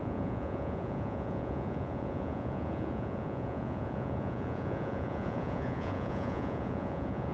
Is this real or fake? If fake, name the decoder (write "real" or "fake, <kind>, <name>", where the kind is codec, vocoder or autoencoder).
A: fake, vocoder, Vocos